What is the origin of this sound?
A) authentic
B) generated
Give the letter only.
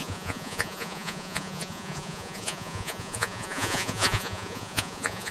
B